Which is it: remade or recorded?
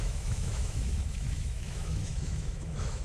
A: remade